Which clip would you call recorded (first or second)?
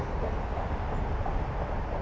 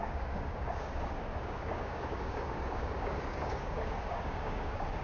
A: first